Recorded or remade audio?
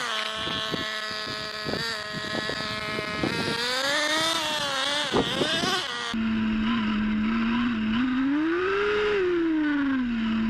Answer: recorded